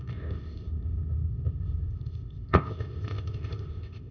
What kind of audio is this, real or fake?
fake